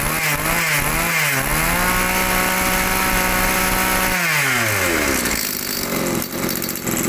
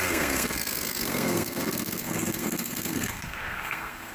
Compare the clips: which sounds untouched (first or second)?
first